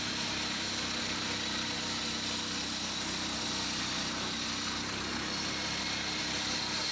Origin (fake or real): real